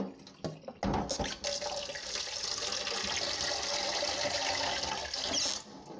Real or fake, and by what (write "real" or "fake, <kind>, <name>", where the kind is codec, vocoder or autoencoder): real